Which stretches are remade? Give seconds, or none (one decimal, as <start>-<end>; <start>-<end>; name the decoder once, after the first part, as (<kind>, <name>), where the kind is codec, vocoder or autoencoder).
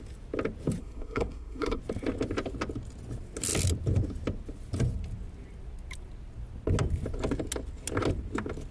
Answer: 0.8-1.8 (codec, SNAC)